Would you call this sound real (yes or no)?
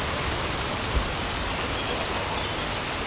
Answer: yes